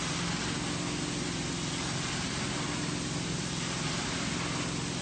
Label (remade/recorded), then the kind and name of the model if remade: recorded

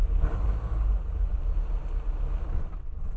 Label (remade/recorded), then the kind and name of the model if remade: recorded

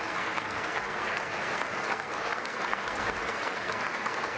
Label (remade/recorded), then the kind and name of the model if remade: remade, codec, SNAC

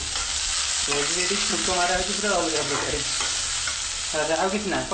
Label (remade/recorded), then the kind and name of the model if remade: recorded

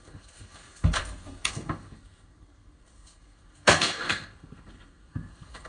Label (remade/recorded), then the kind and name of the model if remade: remade, codec, SNAC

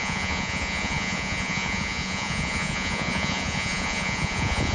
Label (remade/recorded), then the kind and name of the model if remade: remade, vocoder, Vocos